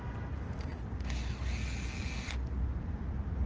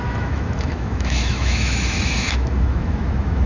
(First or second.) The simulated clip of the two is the second